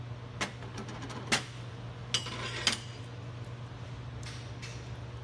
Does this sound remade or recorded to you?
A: recorded